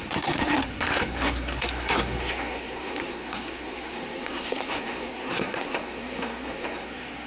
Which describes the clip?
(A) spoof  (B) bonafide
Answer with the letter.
A